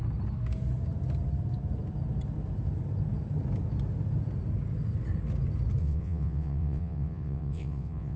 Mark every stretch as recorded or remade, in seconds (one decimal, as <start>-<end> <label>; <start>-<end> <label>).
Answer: 0.0-5.8 recorded; 5.8-8.2 remade